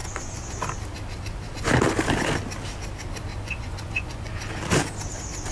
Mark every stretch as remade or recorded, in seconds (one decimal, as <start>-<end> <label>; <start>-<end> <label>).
0.0-0.5 remade; 0.5-3.3 recorded; 3.3-4.5 remade; 4.5-5.5 recorded